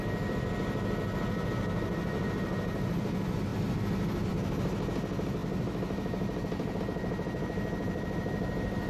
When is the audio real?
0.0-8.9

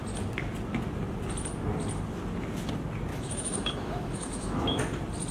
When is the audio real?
0.0-3.1; 4.8-5.3

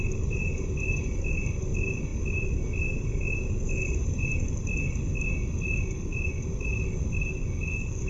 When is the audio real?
0.0-8.1

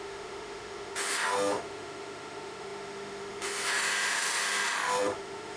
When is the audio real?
none

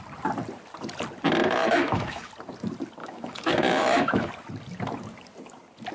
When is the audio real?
0.0-1.6; 2.3-3.0; 4.3-5.9

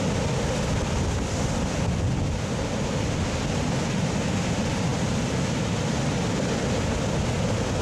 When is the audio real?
0.0-7.8

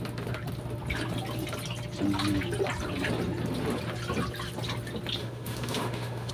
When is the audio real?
0.0-5.2